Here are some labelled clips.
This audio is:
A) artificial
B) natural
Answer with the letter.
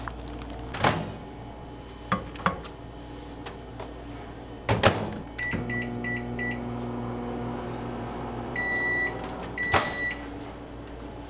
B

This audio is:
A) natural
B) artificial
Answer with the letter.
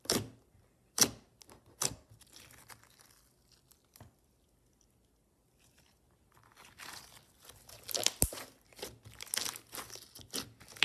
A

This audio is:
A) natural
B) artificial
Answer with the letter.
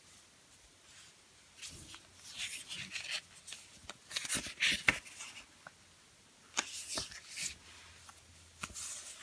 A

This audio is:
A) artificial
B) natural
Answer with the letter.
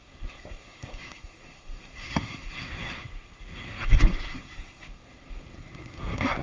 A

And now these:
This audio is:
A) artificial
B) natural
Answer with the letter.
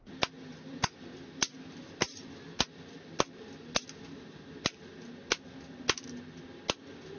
B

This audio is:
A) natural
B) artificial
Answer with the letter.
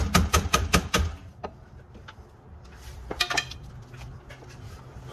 A